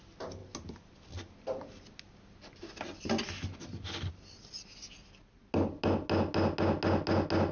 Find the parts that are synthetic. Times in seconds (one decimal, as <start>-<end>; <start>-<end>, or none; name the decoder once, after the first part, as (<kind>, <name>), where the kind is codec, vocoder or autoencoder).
none